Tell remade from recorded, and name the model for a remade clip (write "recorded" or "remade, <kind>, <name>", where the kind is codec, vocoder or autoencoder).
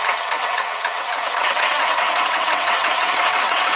remade, vocoder, WaveNeXt